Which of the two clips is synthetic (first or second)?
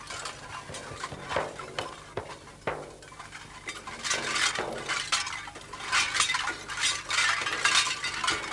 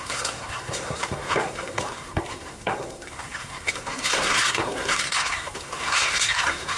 second